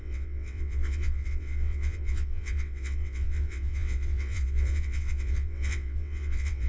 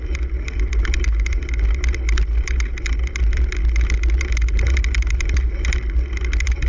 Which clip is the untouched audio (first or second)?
second